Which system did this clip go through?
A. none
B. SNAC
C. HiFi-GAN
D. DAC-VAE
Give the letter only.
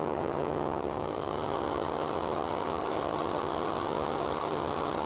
C